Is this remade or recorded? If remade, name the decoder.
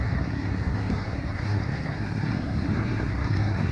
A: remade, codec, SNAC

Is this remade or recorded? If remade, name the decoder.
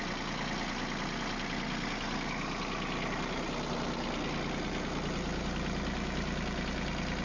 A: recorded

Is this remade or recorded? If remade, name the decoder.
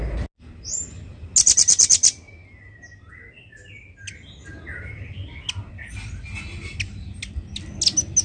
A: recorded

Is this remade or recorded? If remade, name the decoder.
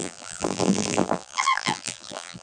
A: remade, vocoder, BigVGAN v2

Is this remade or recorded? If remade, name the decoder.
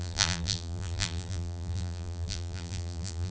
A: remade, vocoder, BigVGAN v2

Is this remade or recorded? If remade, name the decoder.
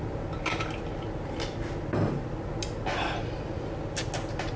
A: recorded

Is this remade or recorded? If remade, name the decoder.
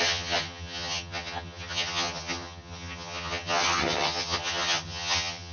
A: remade, vocoder, HiFi-GAN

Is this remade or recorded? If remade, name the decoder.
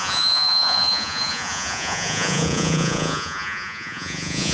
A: remade, vocoder, Vocos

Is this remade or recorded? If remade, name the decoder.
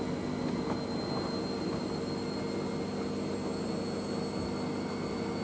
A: recorded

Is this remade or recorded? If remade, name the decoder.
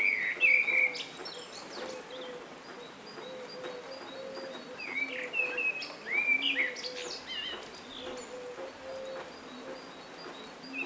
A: recorded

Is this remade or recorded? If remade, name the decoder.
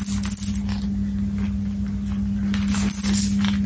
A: recorded